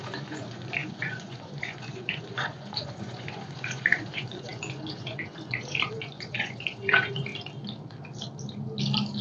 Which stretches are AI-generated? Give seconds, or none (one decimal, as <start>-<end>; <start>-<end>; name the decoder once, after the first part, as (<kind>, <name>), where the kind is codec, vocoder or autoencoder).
0.0-7.3 (vocoder, Vocos)